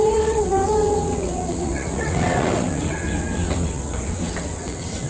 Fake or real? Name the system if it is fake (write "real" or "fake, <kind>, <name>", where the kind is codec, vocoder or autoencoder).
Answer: fake, vocoder, WaveNeXt